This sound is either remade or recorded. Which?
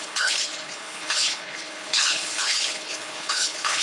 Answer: remade